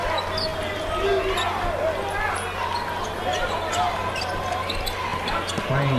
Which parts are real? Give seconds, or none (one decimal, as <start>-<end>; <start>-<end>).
0.0-6.0